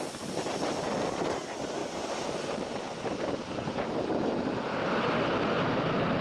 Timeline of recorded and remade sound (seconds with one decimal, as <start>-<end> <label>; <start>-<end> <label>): 0.0-1.8 recorded; 1.8-3.9 remade; 3.9-6.2 recorded